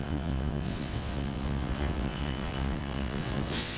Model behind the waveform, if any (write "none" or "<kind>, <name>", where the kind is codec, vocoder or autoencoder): vocoder, WaveNeXt